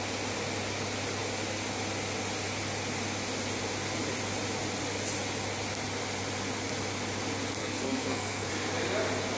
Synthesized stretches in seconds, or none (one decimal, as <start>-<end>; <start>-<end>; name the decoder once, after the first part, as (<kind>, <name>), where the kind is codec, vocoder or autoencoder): 7.6-8.5 (codec, SNAC)